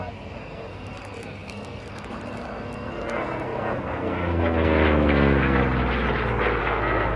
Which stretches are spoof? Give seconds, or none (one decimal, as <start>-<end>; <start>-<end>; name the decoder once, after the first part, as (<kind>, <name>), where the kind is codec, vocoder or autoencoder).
0.0-5.6 (codec, SNAC); 6.6-7.2